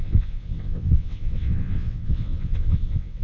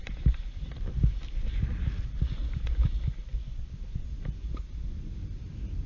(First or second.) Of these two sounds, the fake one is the first